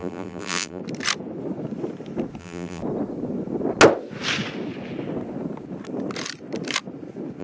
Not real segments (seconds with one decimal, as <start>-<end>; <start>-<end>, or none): 0.0-0.8; 2.4-2.8